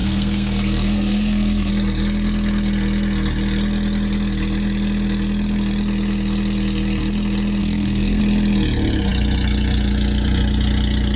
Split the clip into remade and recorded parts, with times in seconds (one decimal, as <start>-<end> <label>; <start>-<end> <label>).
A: 0.0-1.7 remade; 1.7-7.6 recorded; 7.6-8.2 remade; 8.2-11.2 recorded